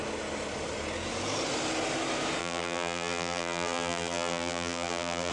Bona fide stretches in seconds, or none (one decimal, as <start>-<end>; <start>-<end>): 0.0-2.4